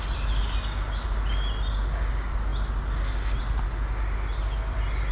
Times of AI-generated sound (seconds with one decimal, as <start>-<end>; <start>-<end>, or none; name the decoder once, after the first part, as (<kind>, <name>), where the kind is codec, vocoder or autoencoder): none